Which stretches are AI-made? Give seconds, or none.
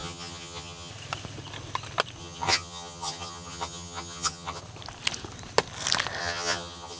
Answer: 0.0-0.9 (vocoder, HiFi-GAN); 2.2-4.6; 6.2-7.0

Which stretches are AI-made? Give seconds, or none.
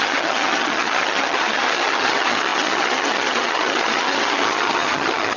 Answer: 0.0-5.4 (vocoder, HiFi-GAN)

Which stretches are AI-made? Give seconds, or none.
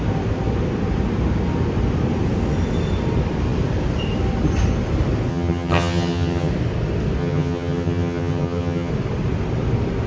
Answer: 5.3-6.5 (vocoder, HiFi-GAN); 7.2-8.9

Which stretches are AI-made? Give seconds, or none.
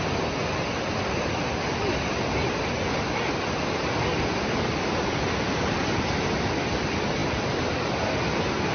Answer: none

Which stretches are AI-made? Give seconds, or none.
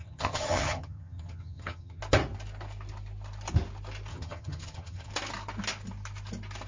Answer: 0.0-2.0 (vocoder, HiFi-GAN); 4.1-5.1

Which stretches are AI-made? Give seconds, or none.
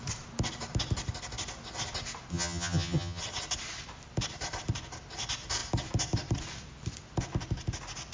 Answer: 2.3-3.2 (vocoder, HiFi-GAN)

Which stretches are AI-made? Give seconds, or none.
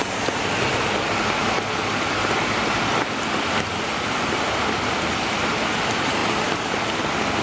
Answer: none